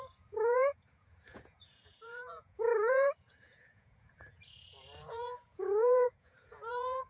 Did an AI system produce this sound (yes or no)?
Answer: yes